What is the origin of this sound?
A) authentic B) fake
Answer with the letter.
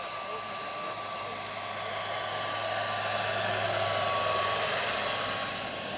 A